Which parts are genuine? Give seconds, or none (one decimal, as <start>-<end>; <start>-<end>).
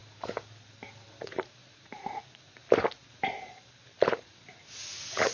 0.0-1.2; 2.6-4.1